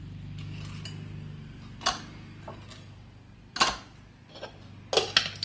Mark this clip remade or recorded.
recorded